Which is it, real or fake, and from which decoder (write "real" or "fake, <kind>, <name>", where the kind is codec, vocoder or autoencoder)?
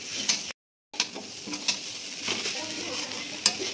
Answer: real